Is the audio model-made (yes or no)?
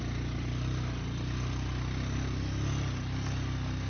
no